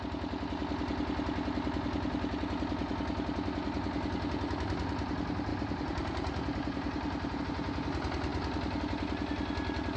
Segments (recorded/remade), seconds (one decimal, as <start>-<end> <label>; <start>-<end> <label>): 0.0-5.5 recorded; 5.5-7.4 remade; 7.4-10.0 recorded